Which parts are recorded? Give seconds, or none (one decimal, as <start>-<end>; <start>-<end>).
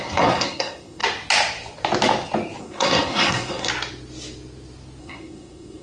1.0-2.6; 3.7-5.0